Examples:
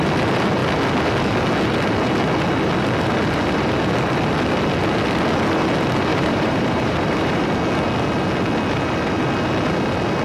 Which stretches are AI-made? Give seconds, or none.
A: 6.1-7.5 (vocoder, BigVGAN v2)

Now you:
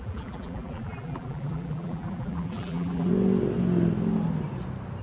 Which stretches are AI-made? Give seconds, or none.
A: 0.0-3.1 (vocoder, BigVGAN v2)

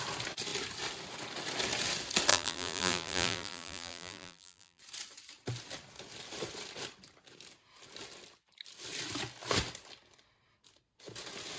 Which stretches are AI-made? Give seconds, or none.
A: 2.3-4.8 (vocoder, BigVGAN v2)

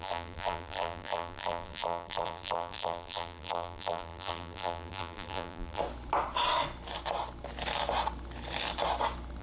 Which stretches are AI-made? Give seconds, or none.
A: 0.0-5.8 (vocoder, BigVGAN v2)